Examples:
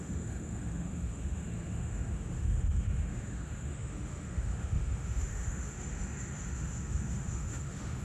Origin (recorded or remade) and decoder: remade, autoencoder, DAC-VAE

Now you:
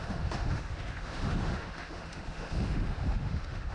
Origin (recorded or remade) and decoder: remade, autoencoder, DAC-VAE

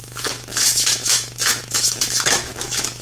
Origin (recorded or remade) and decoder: remade, autoencoder, DAC-VAE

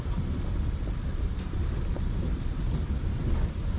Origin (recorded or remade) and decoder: recorded